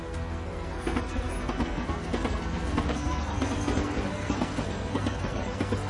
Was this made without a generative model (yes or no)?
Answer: no